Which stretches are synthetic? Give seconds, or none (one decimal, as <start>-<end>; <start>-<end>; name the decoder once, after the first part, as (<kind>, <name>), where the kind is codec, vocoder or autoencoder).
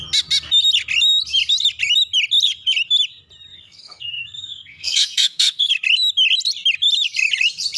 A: 3.5-5.7 (codec, SNAC)